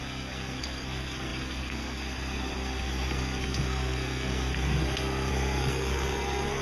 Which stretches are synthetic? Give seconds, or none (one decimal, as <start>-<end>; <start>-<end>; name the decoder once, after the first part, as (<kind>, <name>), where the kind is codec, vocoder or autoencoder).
0.0-6.6 (codec, SNAC)